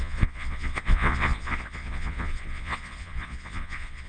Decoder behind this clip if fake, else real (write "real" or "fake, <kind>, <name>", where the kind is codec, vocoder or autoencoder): fake, vocoder, Vocos